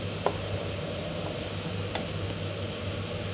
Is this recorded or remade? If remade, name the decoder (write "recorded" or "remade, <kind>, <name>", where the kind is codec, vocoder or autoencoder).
recorded